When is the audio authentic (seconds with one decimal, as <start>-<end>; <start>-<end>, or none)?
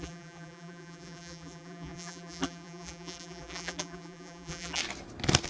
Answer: 4.8-5.5